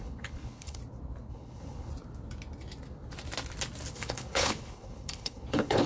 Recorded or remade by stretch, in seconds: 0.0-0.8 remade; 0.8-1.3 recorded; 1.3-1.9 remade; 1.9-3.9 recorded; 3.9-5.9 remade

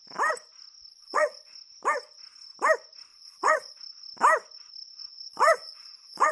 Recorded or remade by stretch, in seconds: 0.0-0.9 recorded; 0.9-1.5 remade; 1.5-3.1 recorded; 3.1-3.8 remade; 3.8-5.3 recorded; 5.3-6.3 remade

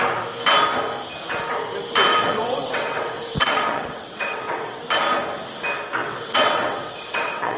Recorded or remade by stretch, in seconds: 0.0-2.1 recorded; 2.1-4.8 remade; 4.8-6.0 recorded; 6.0-7.6 remade

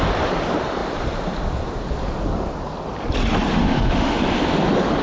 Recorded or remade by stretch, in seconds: 0.0-3.5 recorded; 3.5-4.2 remade; 4.2-5.0 recorded

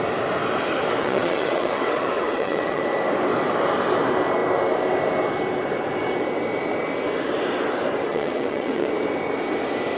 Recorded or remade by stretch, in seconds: 0.0-1.0 recorded; 1.0-2.8 remade; 2.8-8.1 recorded; 8.1-8.9 remade; 8.9-10.0 recorded

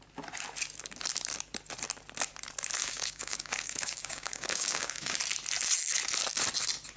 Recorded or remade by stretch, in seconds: 0.0-2.8 recorded; 2.8-5.2 remade; 5.2-7.0 recorded

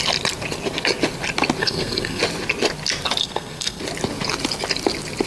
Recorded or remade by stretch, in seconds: 0.0-1.6 recorded; 1.6-2.2 remade; 2.2-3.2 recorded; 3.2-3.8 remade; 3.8-5.3 recorded

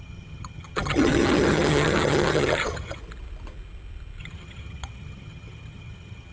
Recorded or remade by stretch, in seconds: 0.0-3.0 remade; 3.0-4.2 recorded; 4.2-6.3 remade